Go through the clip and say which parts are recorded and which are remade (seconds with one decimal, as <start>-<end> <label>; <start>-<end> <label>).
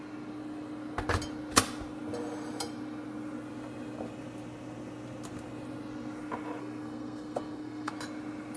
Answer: 0.0-6.6 recorded; 6.6-7.9 remade; 7.9-8.6 recorded